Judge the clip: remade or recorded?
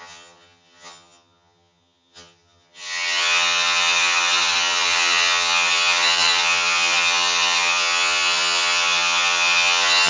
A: remade